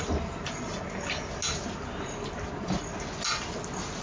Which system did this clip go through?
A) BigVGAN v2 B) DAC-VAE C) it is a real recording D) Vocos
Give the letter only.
C